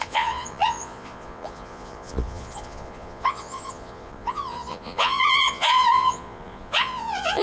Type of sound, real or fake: fake